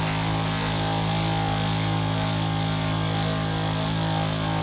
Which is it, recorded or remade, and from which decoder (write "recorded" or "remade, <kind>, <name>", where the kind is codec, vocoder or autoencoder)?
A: recorded